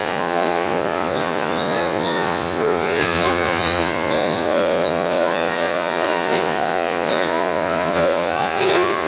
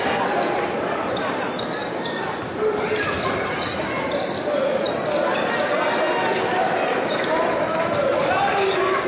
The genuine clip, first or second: second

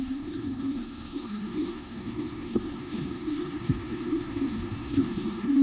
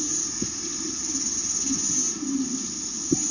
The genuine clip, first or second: second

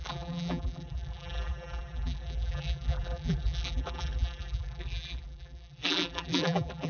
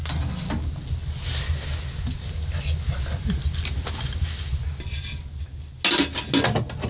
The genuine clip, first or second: second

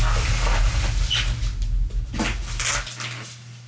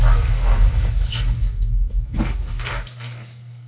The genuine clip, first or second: first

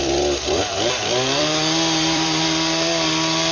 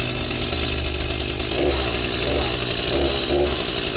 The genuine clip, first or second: second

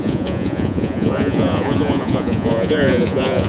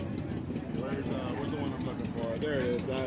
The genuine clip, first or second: second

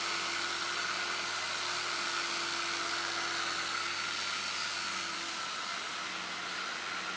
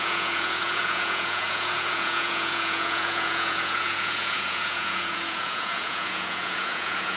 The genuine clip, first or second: first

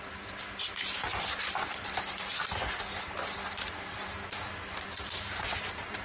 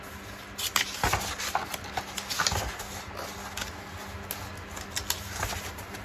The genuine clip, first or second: second